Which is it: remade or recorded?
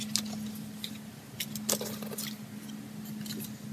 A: recorded